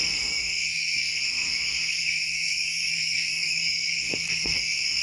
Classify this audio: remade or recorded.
remade